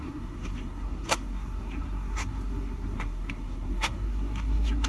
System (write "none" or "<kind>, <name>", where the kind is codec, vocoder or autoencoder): codec, SNAC